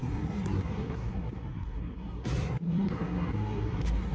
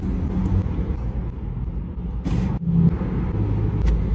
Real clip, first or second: second